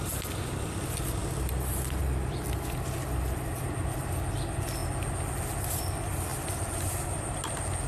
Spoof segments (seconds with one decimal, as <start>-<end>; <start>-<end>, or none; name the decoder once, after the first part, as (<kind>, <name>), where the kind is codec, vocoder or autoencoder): none